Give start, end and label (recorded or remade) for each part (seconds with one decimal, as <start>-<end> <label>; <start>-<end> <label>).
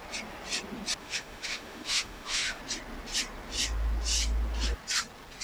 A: 0.0-1.0 recorded; 1.0-2.6 remade; 2.6-5.4 recorded